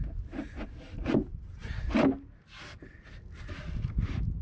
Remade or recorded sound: recorded